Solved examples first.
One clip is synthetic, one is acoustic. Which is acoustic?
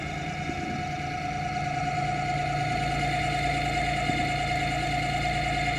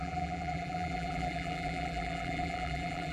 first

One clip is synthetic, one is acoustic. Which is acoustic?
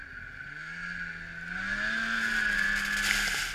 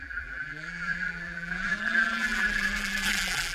first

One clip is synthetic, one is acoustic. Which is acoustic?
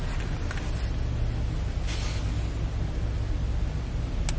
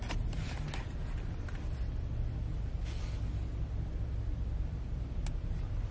first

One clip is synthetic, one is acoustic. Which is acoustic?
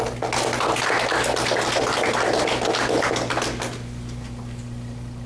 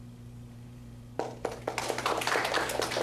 first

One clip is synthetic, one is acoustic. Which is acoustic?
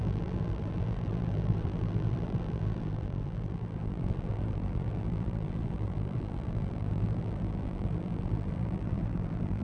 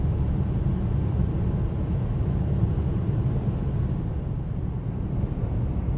second